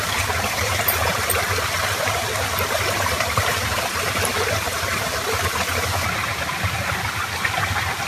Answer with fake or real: real